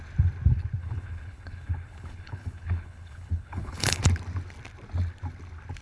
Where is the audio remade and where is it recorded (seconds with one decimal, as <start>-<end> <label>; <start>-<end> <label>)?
0.0-0.8 recorded; 0.8-4.0 remade; 4.0-5.8 recorded